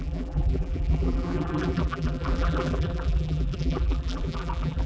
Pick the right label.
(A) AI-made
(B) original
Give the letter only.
A